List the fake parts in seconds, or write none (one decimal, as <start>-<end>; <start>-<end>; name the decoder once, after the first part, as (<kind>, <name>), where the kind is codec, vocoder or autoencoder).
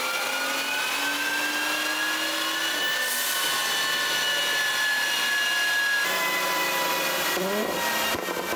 none